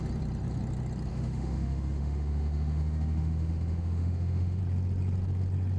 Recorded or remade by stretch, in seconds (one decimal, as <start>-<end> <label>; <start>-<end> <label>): 0.0-1.1 recorded; 1.1-4.6 remade; 4.6-5.8 recorded